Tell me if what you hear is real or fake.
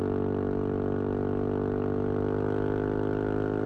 real